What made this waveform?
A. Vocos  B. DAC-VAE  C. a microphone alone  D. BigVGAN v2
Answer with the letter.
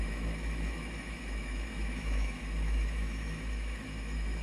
B